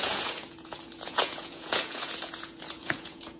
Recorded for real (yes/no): no